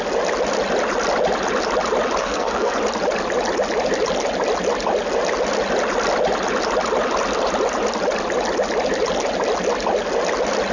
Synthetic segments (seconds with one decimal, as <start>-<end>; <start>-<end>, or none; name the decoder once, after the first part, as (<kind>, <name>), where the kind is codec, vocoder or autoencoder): 2.2-2.8 (codec, SNAC)